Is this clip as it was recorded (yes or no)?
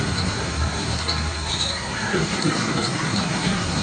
no